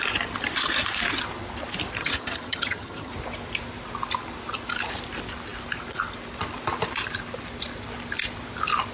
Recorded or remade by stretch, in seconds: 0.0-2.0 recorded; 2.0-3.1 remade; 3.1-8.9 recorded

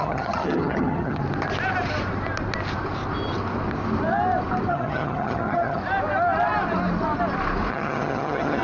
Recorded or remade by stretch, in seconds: 0.0-1.2 remade; 1.2-4.7 recorded; 4.7-5.8 remade; 5.8-7.7 recorded; 7.7-8.6 remade

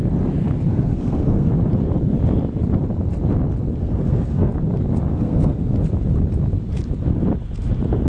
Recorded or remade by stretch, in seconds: 0.0-0.7 recorded; 0.7-1.5 remade; 1.5-3.8 recorded; 3.8-4.5 remade; 4.5-5.1 recorded; 5.1-5.7 remade; 5.7-8.1 recorded

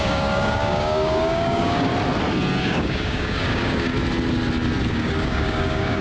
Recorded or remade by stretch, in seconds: 0.0-1.9 remade; 1.9-2.6 recorded; 2.6-3.9 remade; 3.9-4.9 recorded; 4.9-6.0 remade